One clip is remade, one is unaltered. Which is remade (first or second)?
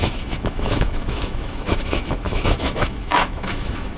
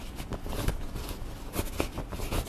first